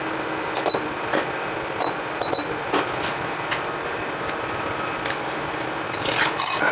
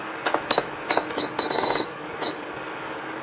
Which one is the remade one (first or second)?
second